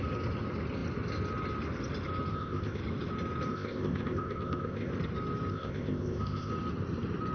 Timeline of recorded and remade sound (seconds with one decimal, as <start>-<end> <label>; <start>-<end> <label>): 0.0-2.3 recorded; 2.3-2.8 remade; 2.8-3.5 recorded; 3.5-4.9 remade; 4.9-5.5 recorded; 5.5-6.5 remade; 6.5-7.3 recorded